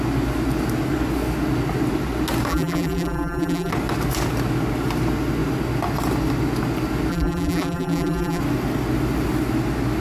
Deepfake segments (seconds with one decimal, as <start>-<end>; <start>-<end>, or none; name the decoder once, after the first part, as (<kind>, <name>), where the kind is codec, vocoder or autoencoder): 2.5-3.7 (vocoder, BigVGAN v2); 7.1-8.4